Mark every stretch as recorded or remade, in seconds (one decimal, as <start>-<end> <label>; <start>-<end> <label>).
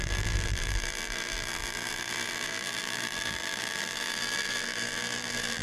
0.0-5.6 remade